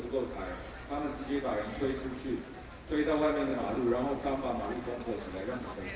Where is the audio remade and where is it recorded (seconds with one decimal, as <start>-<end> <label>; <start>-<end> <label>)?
0.0-6.0 recorded